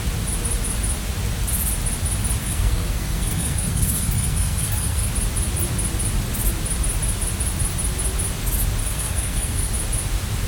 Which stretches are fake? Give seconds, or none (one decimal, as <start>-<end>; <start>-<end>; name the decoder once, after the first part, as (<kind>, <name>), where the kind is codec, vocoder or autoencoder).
2.4-5.1 (codec, SNAC); 8.8-9.7

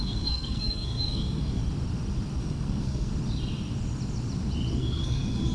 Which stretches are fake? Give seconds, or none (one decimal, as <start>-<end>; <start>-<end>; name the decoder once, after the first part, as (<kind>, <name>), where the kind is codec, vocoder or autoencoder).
0.0-1.6 (codec, SNAC); 2.4-3.1; 4.7-5.5

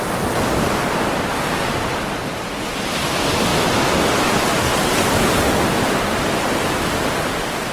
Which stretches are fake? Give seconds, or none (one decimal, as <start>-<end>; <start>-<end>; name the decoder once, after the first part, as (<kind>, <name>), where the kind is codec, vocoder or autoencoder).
none

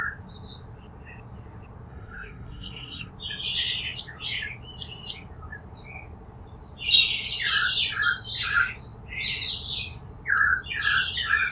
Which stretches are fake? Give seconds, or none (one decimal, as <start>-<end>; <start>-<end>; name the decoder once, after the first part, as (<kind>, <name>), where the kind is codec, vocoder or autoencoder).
1.9-3.1 (codec, SNAC)

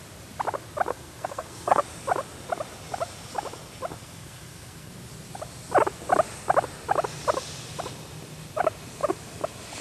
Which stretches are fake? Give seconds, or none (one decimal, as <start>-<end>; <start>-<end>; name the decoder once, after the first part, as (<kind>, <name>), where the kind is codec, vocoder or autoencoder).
0.9-1.8 (codec, SNAC); 3.9-4.9

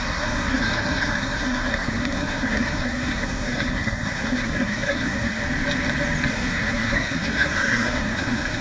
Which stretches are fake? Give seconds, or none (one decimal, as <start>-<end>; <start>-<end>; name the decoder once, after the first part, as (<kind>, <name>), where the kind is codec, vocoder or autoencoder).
0.0-5.4 (codec, SNAC); 6.3-8.6

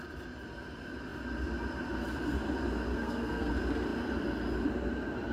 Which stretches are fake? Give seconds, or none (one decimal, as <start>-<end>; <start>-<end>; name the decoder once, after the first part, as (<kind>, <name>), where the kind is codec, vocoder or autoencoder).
2.9-3.5 (codec, SNAC)